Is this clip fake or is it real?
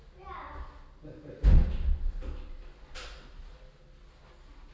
real